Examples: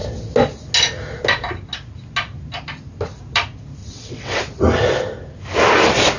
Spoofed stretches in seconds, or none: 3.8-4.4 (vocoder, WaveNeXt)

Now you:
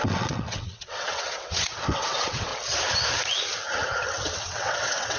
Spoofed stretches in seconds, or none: 0.0-2.5 (vocoder, WaveNeXt); 4.3-5.2

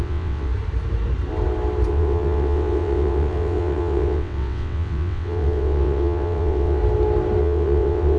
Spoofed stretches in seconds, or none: 0.0-0.5 (vocoder, WaveNeXt); 1.9-6.8; 7.4-8.2

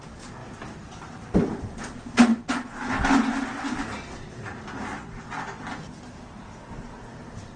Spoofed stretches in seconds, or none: none

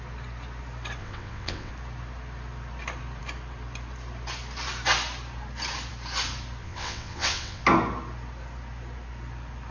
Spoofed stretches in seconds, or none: 1.0-1.7 (vocoder, WaveNeXt); 6.6-7.6

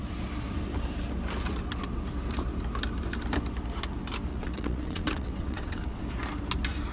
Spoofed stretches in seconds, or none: 4.3-6.0 (vocoder, WaveNeXt)